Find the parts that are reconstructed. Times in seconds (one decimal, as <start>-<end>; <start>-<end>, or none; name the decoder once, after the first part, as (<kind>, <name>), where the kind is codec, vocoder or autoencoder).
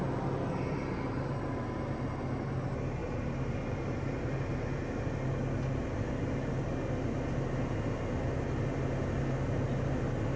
none